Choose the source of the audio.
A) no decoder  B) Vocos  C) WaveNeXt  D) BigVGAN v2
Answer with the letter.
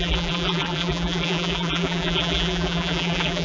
D